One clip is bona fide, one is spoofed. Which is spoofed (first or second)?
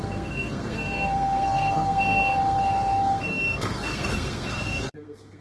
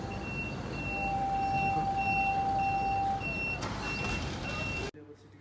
first